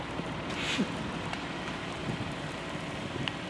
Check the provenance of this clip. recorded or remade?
remade